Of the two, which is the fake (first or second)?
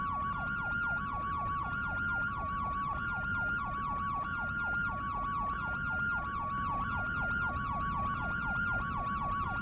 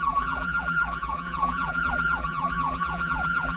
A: second